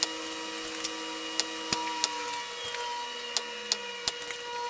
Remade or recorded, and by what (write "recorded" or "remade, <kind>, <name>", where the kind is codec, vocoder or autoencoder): recorded